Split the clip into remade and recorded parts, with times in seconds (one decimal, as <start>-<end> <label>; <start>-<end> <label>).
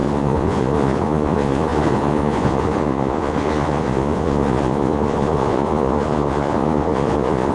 0.0-7.5 remade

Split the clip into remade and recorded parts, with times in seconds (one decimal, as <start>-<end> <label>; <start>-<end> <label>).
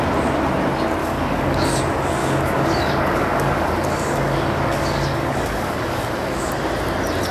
0.0-1.0 recorded; 1.0-1.8 remade; 1.8-2.2 recorded; 2.2-6.5 remade; 6.5-7.3 recorded